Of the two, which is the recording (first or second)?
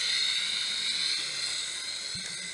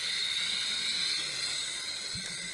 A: first